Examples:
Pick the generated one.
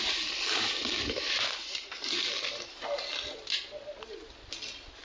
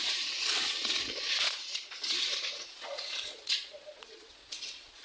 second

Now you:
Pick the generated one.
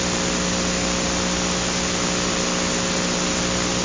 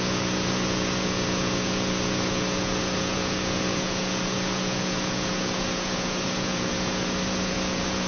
second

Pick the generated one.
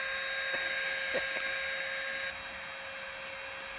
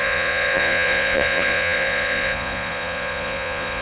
second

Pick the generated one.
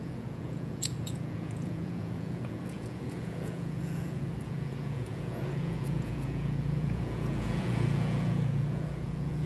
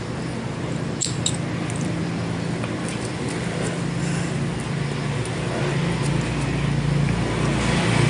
first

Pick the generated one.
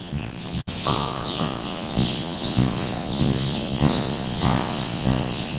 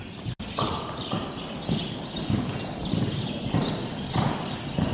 first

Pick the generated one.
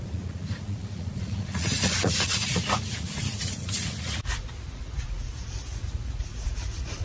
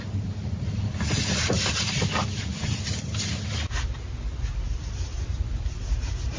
first